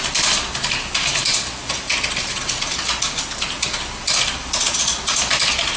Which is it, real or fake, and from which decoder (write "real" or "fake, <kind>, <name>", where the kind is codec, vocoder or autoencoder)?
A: real